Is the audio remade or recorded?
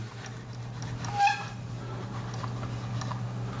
recorded